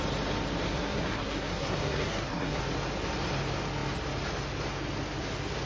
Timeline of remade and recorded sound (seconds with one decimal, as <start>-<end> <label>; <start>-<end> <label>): 0.0-0.7 recorded; 0.7-2.6 remade; 2.6-5.7 recorded